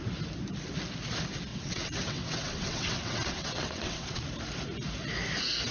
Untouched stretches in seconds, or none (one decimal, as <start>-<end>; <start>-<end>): 0.0-1.5; 4.2-5.7